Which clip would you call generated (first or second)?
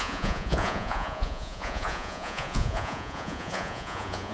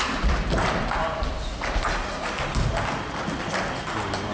first